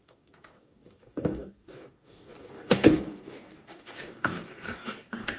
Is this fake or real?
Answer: fake